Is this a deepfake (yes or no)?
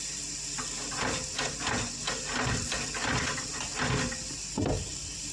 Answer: no